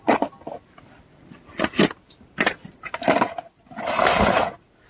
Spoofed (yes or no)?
no